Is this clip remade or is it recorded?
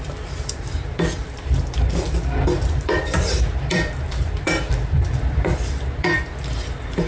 remade